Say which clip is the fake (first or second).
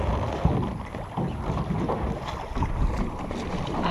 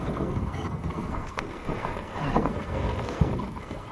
second